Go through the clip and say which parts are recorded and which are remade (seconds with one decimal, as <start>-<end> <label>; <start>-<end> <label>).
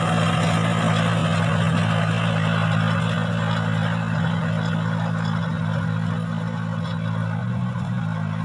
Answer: 0.0-7.4 recorded; 7.4-8.0 remade; 8.0-8.4 recorded